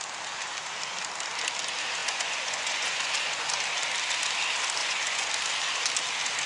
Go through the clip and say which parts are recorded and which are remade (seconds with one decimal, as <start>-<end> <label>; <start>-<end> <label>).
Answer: 0.0-2.0 recorded; 2.0-3.5 remade; 3.5-4.8 recorded; 4.8-5.3 remade; 5.3-6.5 recorded